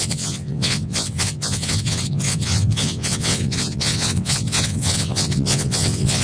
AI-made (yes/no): yes